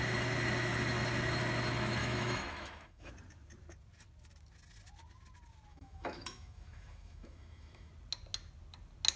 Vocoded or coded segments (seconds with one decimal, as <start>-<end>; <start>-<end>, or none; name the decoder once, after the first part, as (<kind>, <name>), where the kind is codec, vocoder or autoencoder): 2.0-3.1 (autoencoder, DAC-VAE); 5.7-7.9